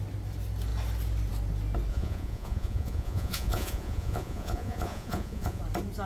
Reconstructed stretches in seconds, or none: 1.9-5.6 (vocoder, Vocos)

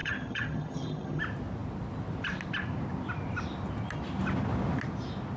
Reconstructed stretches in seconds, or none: 0.0-1.2 (vocoder, HiFi-GAN)

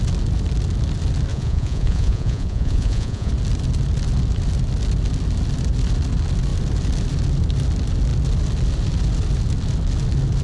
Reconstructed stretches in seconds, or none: 1.3-3.3 (vocoder, Vocos)

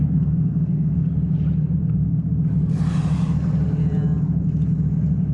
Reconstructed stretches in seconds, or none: 0.0-1.0 (codec, SNAC); 1.8-2.3

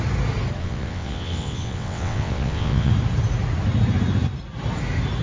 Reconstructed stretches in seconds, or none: 0.6-2.9 (vocoder, WaveNeXt)

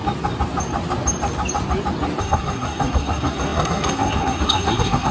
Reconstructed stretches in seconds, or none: 2.2-5.1 (codec, SNAC)